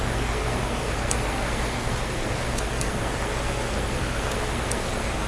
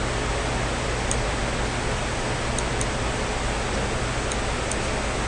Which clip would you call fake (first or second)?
first